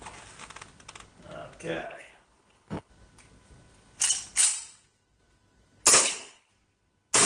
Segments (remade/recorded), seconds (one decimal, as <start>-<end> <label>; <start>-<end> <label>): 0.0-1.8 recorded; 1.8-2.9 remade; 2.9-5.9 recorded; 5.9-6.5 remade; 6.5-7.3 recorded